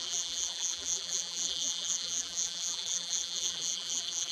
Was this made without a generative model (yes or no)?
no